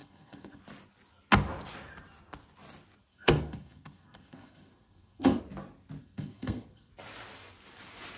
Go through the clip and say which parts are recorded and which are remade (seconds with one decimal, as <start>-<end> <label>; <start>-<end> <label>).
0.0-0.6 remade; 0.6-3.1 recorded; 3.1-5.4 remade; 5.4-6.0 recorded; 6.0-6.9 remade; 6.9-8.2 recorded